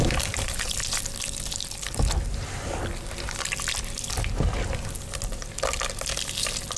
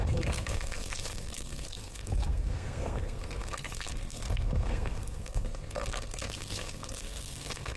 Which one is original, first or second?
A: first